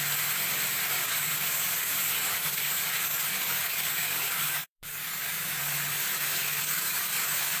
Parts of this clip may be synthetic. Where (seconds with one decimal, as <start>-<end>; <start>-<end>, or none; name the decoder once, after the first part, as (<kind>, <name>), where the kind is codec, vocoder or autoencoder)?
1.0-5.6 (codec, DAC); 6.1-7.6